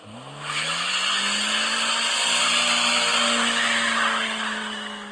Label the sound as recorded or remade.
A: recorded